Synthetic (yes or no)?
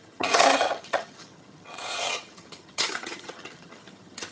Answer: yes